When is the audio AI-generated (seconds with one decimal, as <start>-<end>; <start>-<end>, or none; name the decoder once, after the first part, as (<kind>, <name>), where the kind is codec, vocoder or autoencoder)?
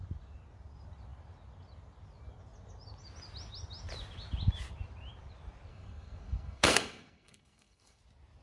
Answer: 5.7-8.0 (codec, SNAC)